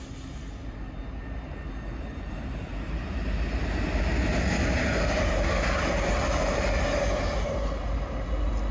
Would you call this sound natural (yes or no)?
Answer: yes